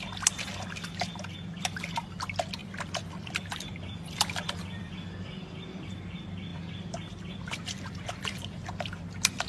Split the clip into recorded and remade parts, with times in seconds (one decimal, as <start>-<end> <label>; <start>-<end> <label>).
0.0-2.6 recorded; 2.6-4.9 remade; 4.9-6.5 recorded; 6.5-8.7 remade; 8.7-9.5 recorded